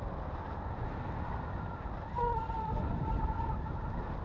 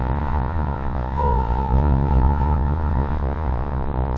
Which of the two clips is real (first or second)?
first